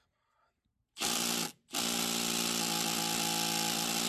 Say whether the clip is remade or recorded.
recorded